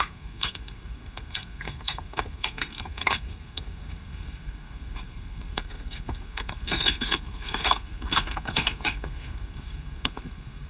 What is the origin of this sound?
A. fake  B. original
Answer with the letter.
A